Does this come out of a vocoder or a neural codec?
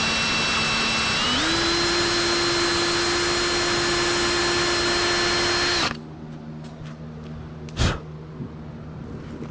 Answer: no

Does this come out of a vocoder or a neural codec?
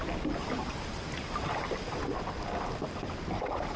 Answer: yes